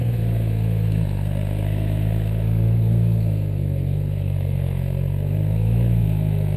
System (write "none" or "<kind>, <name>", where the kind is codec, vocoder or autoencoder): codec, SNAC